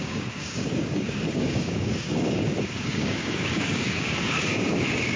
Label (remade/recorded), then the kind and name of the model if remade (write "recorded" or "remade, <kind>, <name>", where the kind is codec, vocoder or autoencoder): remade, codec, DAC